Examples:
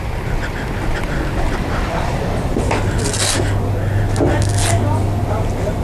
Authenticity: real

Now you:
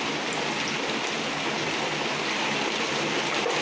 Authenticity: real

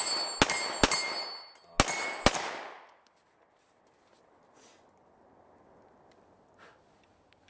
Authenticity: real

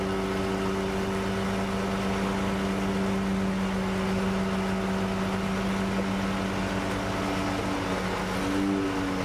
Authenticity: real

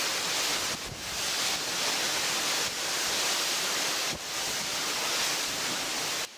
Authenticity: real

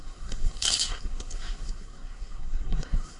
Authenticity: fake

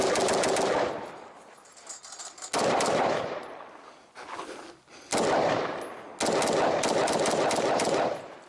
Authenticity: real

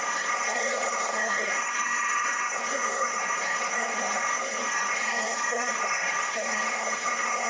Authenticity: fake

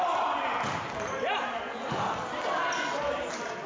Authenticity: real